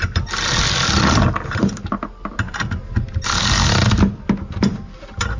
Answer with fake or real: real